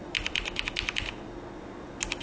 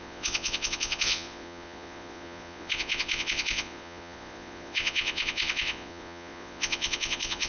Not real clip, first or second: second